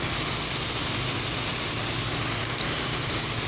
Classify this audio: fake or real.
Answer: real